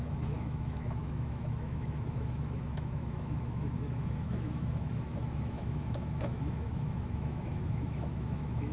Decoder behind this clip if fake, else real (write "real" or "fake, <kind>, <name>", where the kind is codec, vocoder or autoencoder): fake, autoencoder, DAC-VAE